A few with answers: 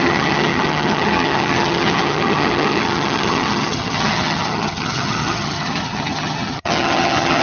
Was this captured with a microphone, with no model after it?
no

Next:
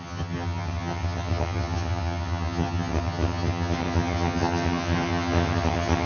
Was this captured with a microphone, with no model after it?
no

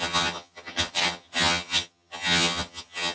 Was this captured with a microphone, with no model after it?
no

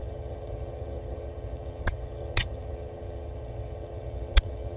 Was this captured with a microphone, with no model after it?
no